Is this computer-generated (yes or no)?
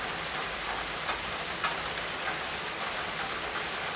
no